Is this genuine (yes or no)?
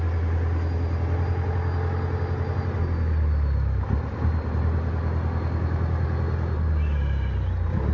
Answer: yes